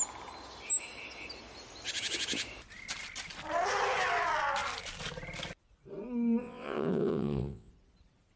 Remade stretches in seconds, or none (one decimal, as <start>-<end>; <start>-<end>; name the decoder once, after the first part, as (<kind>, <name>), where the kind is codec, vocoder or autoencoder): 6.4-7.7 (vocoder, WaveNeXt)